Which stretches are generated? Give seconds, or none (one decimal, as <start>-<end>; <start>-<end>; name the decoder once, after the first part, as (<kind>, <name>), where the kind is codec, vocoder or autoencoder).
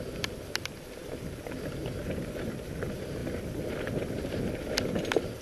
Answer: none